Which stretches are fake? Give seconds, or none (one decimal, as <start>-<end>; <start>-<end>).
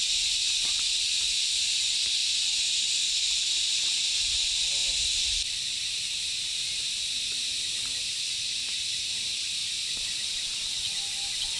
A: 0.0-2.2; 4.2-11.6